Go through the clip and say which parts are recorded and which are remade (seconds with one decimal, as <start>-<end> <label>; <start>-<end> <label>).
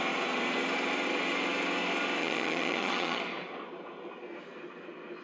0.0-2.2 recorded; 2.2-3.2 remade; 3.2-5.2 recorded